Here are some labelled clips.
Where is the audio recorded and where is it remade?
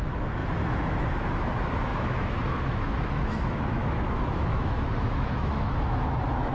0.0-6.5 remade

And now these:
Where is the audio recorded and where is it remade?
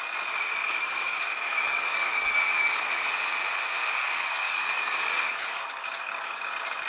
0.0-0.6 recorded; 0.6-3.1 remade; 3.1-3.8 recorded; 3.8-6.5 remade; 6.5-6.9 recorded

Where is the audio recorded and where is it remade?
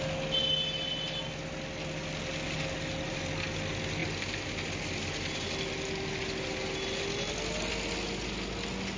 0.0-9.0 recorded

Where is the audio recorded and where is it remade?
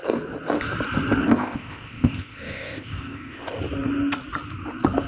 0.0-1.2 recorded; 1.2-3.6 remade; 3.6-5.1 recorded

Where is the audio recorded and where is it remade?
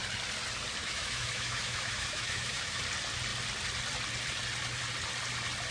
0.0-0.8 recorded; 0.8-2.8 remade; 2.8-5.7 recorded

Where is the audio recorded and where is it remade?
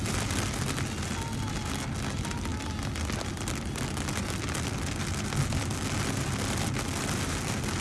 0.0-7.8 recorded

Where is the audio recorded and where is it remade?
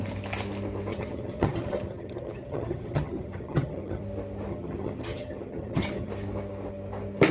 0.0-0.9 recorded; 0.9-4.0 remade; 4.0-4.5 recorded; 4.5-6.1 remade; 6.1-7.3 recorded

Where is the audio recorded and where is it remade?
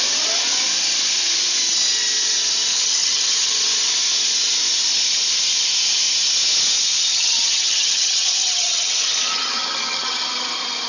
0.0-2.7 recorded; 2.7-3.5 remade; 3.5-7.1 recorded; 7.1-10.2 remade; 10.2-10.9 recorded